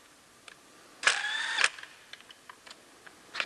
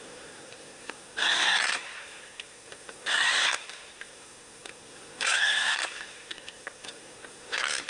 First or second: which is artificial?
second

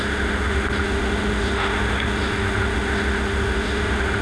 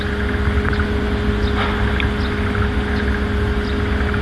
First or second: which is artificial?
first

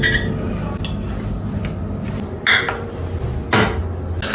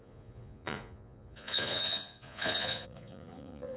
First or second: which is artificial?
second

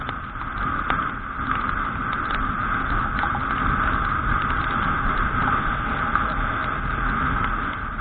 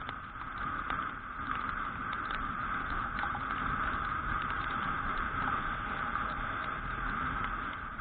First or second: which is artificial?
second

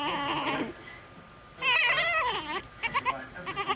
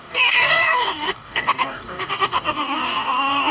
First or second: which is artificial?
second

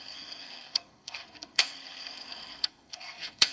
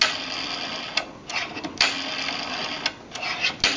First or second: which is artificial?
first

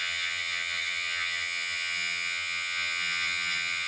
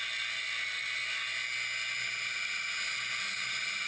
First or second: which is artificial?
first